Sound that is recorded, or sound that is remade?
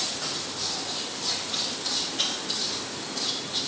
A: recorded